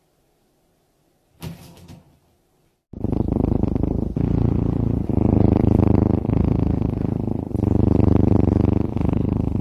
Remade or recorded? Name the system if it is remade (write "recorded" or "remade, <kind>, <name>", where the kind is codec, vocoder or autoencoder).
remade, vocoder, BigVGAN v2